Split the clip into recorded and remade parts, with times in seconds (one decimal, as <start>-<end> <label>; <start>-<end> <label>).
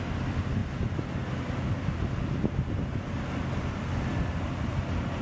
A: 0.0-5.2 recorded